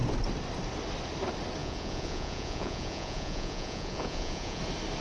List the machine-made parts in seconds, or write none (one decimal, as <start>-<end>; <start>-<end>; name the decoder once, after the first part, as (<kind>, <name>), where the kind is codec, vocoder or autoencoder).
1.6-4.6 (vocoder, Vocos)